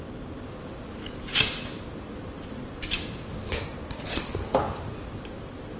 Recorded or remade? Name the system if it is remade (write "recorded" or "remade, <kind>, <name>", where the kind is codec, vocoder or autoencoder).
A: recorded